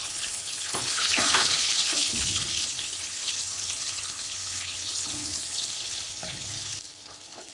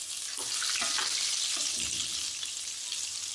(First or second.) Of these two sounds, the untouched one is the second